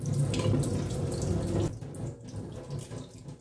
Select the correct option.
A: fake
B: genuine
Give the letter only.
B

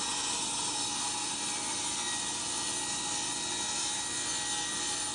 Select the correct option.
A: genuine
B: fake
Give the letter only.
A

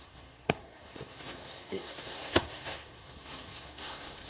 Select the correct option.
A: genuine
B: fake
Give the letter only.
B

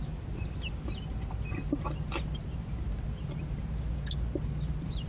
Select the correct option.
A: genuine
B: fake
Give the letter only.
A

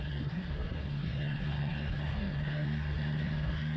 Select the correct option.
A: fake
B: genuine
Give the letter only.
A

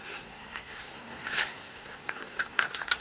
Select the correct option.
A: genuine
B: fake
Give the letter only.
B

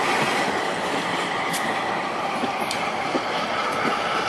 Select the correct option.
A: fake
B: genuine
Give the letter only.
B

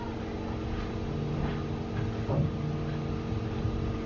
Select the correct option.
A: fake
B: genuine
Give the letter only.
B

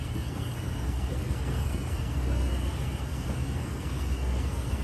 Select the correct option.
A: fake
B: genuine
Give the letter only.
A